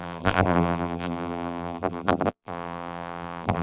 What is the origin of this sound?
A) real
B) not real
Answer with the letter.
B